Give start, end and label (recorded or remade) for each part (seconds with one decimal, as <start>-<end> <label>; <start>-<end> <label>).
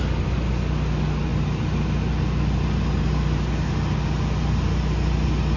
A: 0.0-5.6 recorded